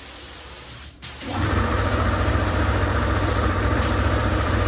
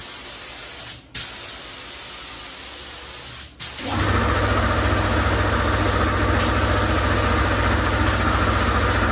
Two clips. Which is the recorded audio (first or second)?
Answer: second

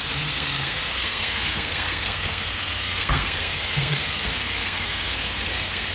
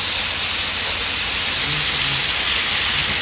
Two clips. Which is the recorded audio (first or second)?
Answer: second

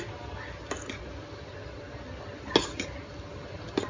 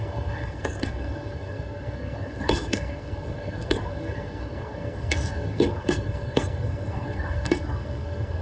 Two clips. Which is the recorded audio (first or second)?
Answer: first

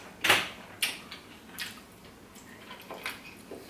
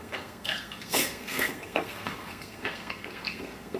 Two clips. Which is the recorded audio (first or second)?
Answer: first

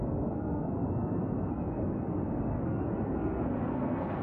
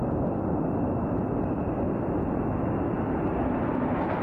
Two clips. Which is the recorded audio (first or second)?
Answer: second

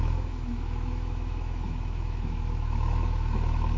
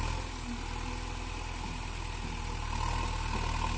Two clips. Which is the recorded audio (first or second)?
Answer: second